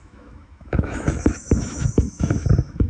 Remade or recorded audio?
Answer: remade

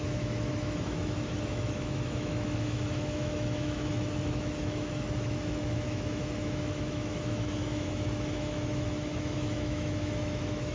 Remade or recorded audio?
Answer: remade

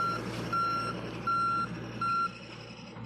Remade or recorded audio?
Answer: recorded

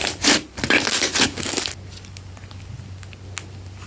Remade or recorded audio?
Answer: recorded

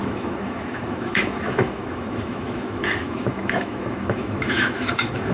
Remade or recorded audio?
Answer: remade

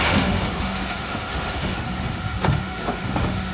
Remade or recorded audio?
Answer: remade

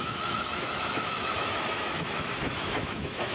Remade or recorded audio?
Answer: remade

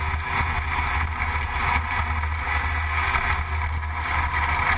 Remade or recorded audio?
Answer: recorded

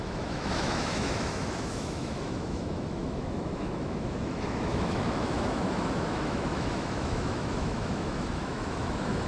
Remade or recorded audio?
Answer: remade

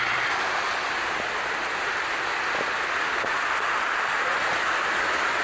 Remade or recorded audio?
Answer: recorded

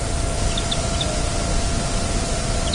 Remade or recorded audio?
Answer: recorded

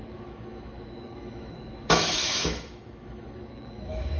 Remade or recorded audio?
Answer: remade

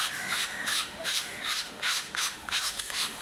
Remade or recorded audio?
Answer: remade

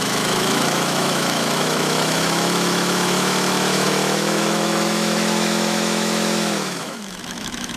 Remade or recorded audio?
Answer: remade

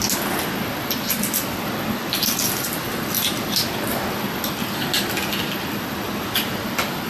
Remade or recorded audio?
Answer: recorded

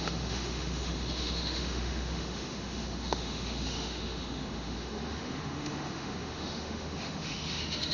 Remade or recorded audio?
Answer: remade